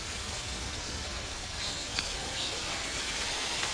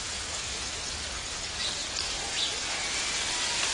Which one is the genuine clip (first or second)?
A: second